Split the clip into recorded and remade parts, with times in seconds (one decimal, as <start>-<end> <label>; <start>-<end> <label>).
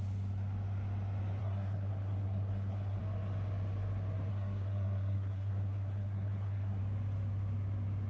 0.0-1.4 recorded; 1.4-3.0 remade; 3.0-4.3 recorded; 4.3-6.8 remade; 6.8-8.1 recorded